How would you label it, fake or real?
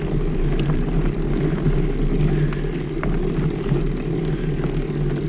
real